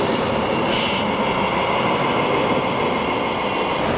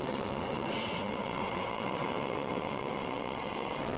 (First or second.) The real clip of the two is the first